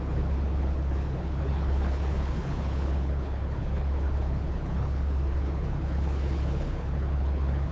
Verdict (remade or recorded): remade